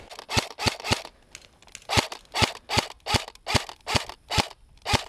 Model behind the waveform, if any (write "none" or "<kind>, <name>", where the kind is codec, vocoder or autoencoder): none